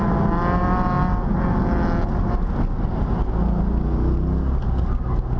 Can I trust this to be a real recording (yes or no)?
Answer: yes